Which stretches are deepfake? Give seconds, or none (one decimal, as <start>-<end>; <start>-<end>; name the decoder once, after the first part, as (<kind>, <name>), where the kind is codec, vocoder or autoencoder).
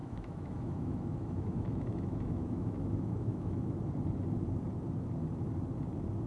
0.0-3.7 (autoencoder, DAC-VAE)